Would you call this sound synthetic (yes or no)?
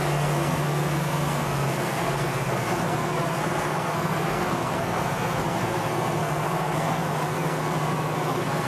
yes